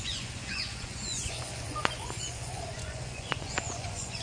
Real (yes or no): no